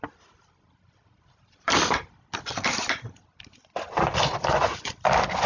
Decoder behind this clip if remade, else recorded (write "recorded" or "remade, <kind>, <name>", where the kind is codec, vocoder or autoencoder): recorded